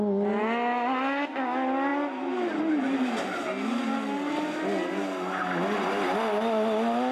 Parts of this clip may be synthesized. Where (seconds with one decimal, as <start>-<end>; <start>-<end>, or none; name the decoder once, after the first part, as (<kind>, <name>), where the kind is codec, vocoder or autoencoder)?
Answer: none